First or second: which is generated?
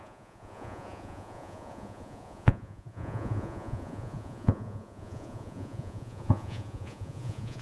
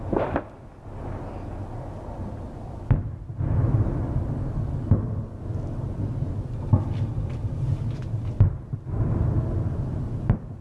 first